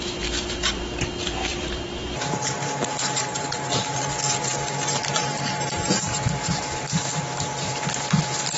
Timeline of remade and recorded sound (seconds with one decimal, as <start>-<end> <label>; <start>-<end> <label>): 0.0-1.5 recorded; 1.5-2.7 remade; 2.7-3.2 recorded; 3.2-3.9 remade; 3.9-5.0 recorded; 5.0-7.7 remade; 7.7-8.6 recorded